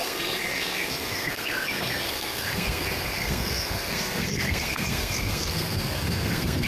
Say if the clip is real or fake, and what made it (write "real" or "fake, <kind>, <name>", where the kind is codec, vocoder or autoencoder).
fake, codec, SNAC